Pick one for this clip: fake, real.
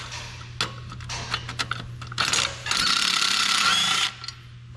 real